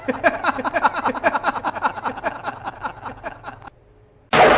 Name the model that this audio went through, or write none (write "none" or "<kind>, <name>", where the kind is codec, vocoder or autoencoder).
none